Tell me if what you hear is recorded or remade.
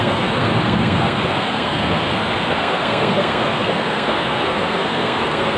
remade